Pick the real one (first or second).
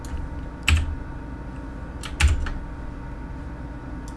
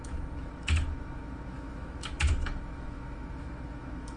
first